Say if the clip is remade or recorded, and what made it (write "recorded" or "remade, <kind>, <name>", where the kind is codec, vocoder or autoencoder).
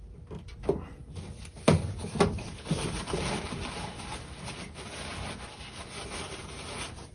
recorded